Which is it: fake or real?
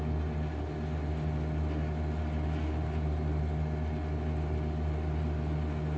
real